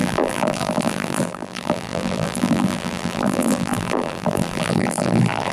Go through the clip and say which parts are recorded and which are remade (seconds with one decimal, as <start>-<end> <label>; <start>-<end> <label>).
0.0-5.5 remade